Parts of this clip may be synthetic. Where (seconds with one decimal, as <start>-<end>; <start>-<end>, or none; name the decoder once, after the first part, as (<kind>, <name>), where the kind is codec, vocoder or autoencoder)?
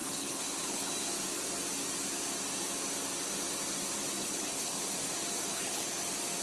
0.0-0.9 (codec, HILCodec); 4.2-4.8; 5.5-6.0